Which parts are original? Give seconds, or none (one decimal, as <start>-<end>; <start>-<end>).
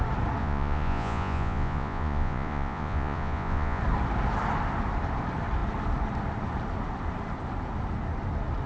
0.0-0.4; 3.8-8.7